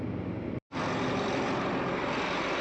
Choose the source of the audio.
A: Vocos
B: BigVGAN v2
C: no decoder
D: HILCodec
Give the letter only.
C